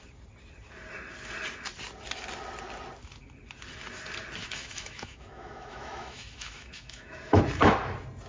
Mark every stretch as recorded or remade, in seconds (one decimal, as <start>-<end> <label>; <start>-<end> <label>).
0.0-4.4 recorded; 4.4-7.4 remade; 7.4-8.3 recorded